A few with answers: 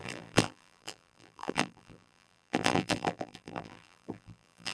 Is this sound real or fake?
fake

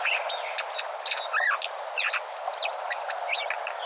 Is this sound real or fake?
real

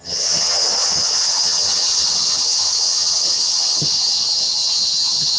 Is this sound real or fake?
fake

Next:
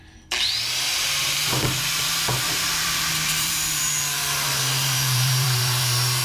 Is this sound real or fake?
fake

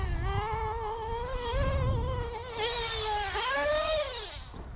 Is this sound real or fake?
real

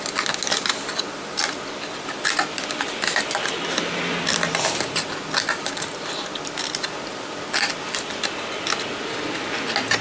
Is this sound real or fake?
real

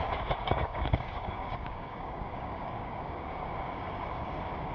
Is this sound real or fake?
fake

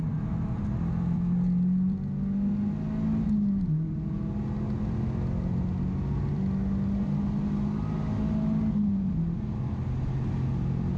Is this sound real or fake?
real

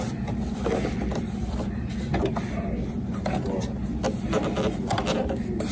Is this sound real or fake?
real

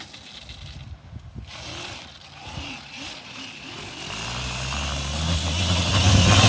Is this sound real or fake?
real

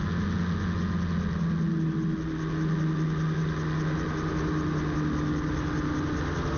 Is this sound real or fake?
real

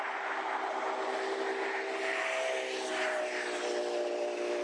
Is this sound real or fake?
real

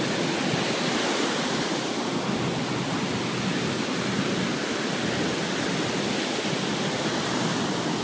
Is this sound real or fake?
real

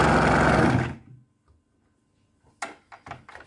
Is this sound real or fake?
real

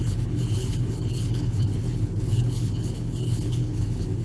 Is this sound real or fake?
fake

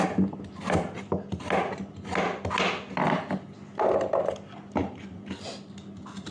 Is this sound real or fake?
real